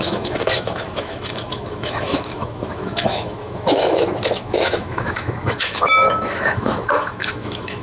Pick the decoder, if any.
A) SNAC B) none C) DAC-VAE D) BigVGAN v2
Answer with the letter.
C